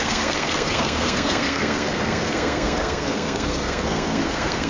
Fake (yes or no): yes